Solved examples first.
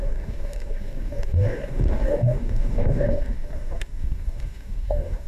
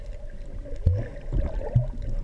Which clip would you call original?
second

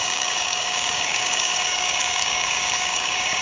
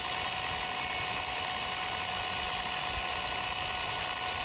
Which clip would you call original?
second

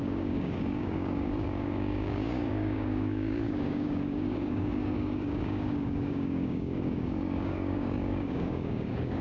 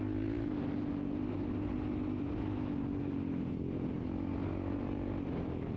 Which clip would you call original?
second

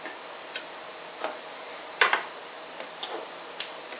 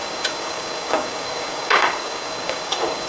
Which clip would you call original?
first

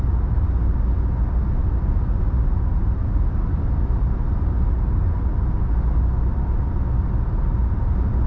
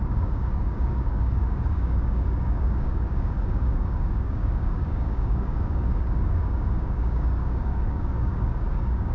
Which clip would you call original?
first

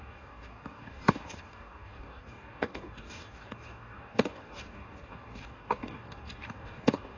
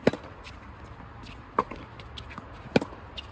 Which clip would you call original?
second